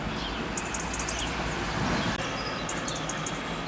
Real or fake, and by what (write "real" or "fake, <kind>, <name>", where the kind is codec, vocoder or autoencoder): real